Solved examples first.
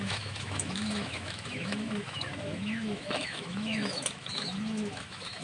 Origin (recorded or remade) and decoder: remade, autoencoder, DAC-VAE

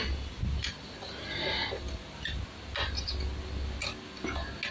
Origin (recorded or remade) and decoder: recorded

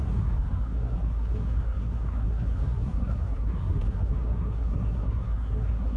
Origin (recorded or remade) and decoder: remade, codec, SNAC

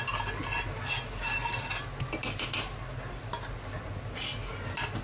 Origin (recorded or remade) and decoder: recorded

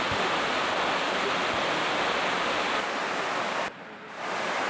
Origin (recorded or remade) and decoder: recorded